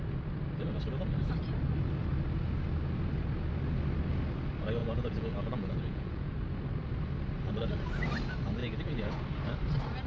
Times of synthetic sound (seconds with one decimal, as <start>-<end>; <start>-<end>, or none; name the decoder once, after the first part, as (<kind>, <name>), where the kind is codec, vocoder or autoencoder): 4.8-6.3 (vocoder, Vocos); 8.6-9.1